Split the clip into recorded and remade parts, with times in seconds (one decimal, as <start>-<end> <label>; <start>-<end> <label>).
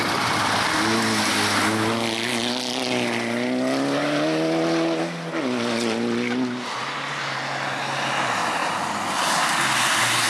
0.0-10.3 recorded